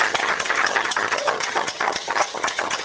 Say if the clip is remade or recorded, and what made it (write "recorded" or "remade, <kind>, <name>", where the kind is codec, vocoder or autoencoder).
remade, vocoder, HiFi-GAN